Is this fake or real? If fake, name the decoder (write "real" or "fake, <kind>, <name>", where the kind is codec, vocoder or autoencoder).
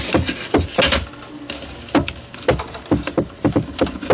real